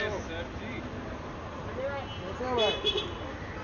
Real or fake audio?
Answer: real